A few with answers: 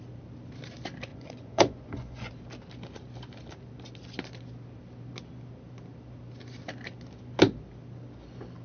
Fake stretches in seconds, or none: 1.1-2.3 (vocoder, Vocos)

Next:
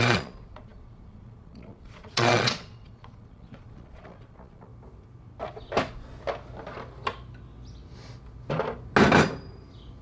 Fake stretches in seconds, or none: 0.0-4.7 (vocoder, Vocos)